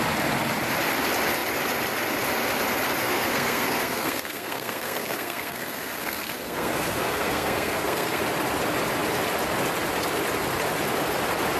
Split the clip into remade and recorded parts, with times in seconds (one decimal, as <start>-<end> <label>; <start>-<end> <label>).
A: 0.0-3.0 recorded; 3.0-8.2 remade; 8.2-11.6 recorded